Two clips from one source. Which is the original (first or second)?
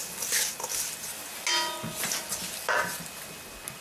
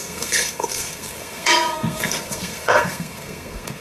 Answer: first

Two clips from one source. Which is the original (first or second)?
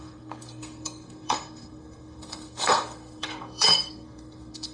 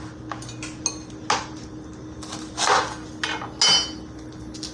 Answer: second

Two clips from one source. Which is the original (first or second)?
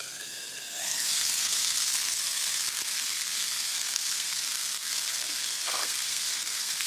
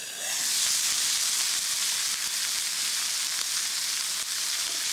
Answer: second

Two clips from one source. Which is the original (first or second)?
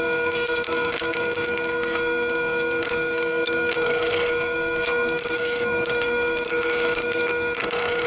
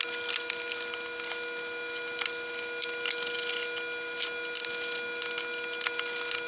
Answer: second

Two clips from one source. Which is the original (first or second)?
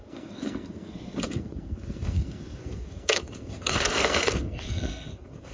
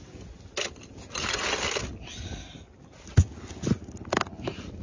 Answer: second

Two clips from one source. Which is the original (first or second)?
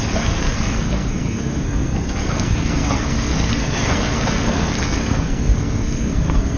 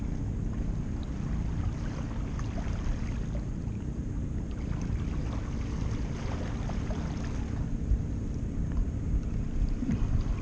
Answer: second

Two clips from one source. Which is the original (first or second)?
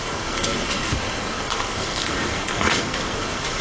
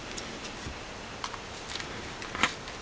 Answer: second